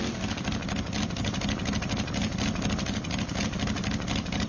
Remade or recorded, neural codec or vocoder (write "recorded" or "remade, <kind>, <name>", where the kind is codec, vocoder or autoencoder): recorded